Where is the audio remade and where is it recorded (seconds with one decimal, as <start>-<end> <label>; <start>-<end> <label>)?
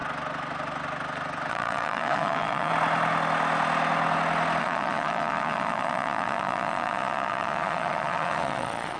0.0-1.5 recorded; 1.5-2.7 remade; 2.7-4.6 recorded; 4.6-9.0 remade